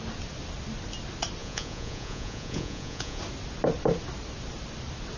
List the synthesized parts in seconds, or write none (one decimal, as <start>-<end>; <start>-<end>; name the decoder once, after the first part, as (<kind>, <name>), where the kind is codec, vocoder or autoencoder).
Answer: 1.4-3.2 (vocoder, Vocos)